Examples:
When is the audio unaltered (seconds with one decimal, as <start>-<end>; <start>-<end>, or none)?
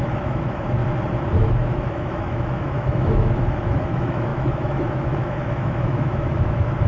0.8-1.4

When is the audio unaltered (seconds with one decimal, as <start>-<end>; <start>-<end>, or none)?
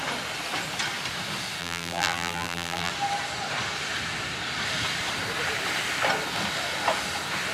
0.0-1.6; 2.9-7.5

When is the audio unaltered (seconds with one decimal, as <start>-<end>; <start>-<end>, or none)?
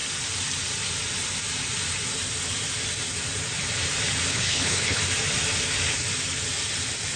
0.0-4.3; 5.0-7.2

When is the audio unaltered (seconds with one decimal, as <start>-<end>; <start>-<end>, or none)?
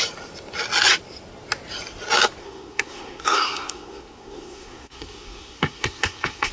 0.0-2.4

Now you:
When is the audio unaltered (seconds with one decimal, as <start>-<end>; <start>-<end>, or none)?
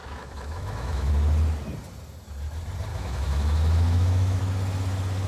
1.1-2.9; 4.4-5.3